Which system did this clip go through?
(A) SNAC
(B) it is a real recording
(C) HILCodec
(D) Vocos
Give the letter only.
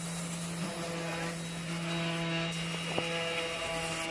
B